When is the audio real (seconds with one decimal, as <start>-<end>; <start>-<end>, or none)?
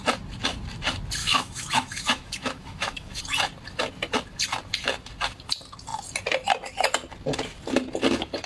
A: 0.0-1.2; 3.2-8.5